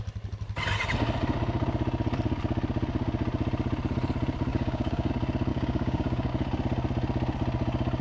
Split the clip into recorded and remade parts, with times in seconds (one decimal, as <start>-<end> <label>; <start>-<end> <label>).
0.0-4.5 recorded; 4.5-5.1 remade; 5.1-5.5 recorded; 5.5-6.3 remade; 6.3-8.0 recorded